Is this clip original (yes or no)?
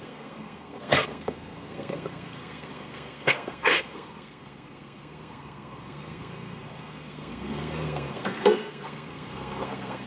no